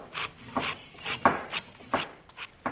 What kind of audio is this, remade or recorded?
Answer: recorded